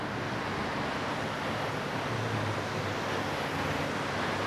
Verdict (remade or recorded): recorded